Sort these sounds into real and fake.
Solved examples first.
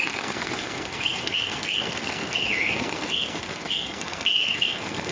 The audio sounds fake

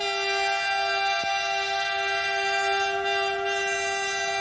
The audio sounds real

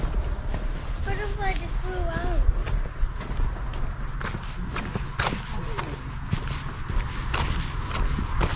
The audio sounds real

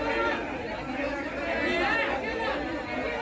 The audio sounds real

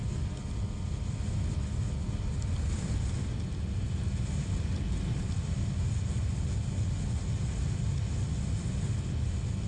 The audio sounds real